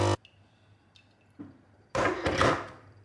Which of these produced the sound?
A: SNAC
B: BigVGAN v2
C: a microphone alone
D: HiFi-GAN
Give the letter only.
C